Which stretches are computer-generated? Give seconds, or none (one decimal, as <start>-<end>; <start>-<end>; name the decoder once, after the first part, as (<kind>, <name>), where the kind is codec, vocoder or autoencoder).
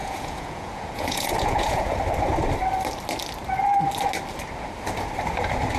0.0-2.0 (vocoder, Vocos)